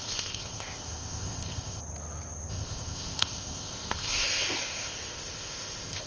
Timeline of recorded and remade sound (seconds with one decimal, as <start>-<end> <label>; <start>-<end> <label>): 0.0-1.8 remade; 1.8-2.5 recorded; 2.5-6.1 remade

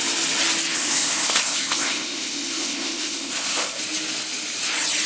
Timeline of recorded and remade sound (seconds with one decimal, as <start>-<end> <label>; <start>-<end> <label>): 0.0-0.7 recorded; 0.7-3.8 remade; 3.8-5.1 recorded

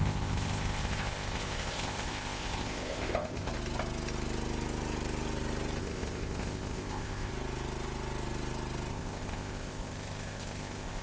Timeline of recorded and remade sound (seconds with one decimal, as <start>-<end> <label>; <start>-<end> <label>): 0.0-3.5 remade; 3.5-5.8 recorded; 5.8-7.3 remade; 7.3-8.9 recorded; 8.9-11.0 remade

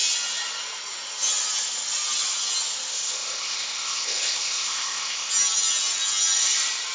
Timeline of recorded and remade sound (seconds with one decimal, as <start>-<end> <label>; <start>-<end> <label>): 0.0-2.9 recorded; 2.9-5.3 remade; 5.3-6.9 recorded

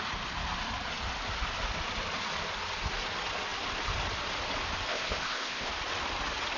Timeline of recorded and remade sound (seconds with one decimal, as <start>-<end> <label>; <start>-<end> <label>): 0.0-4.9 recorded; 4.9-5.7 remade; 5.7-6.6 recorded

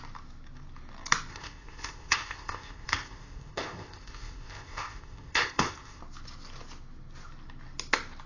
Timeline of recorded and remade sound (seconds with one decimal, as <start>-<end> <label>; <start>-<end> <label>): 0.0-1.3 recorded; 1.3-6.0 remade; 6.0-8.3 recorded

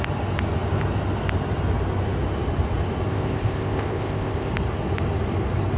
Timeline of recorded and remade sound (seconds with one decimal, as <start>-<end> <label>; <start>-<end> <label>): 0.0-3.1 recorded; 3.1-4.5 remade; 4.5-5.8 recorded

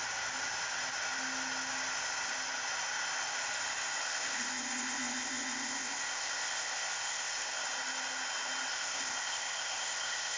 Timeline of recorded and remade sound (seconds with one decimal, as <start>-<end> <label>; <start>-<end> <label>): 0.0-4.0 recorded; 4.0-7.6 remade; 7.6-8.7 recorded; 8.7-10.4 remade